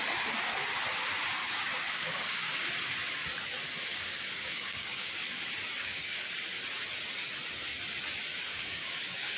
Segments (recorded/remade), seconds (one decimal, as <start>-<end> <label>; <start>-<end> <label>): 0.0-1.4 recorded; 1.4-2.7 remade; 2.7-3.9 recorded; 3.9-5.1 remade; 5.1-5.8 recorded; 5.8-6.3 remade; 6.3-8.5 recorded; 8.5-9.4 remade